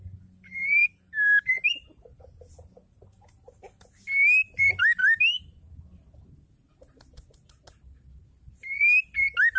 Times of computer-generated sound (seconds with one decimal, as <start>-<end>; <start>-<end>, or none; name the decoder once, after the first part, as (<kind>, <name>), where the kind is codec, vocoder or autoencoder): none